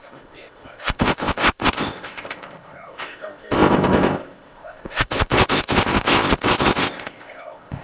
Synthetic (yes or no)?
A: yes